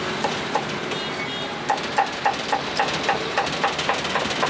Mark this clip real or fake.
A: real